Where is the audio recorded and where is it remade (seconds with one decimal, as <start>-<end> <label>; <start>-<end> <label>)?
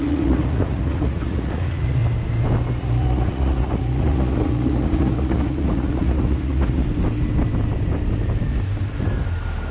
0.0-2.0 remade; 2.0-2.8 recorded; 2.8-6.8 remade; 6.8-9.7 recorded